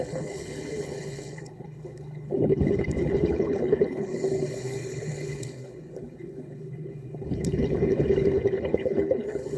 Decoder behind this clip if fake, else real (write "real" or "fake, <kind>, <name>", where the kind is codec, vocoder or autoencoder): fake, codec, HILCodec